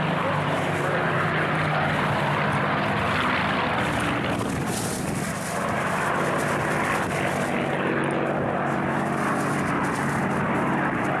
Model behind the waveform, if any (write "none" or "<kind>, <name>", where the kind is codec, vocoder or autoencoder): none